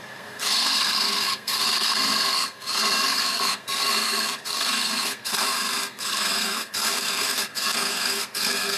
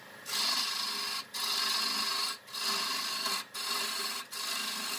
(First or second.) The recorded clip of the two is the second